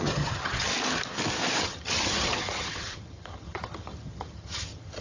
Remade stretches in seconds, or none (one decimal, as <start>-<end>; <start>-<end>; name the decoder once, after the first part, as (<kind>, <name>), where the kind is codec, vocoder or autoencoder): 0.0-0.7 (vocoder, HiFi-GAN); 1.6-5.0